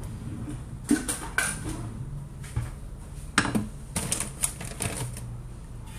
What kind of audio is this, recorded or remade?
recorded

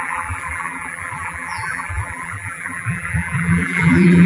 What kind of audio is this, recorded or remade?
remade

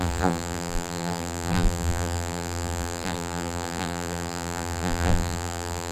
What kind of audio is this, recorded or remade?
remade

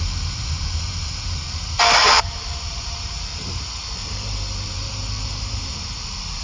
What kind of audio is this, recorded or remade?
remade